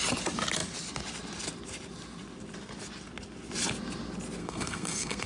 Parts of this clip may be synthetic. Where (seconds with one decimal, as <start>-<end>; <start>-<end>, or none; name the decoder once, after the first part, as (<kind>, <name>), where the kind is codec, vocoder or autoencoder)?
4.4-5.3 (codec, SNAC)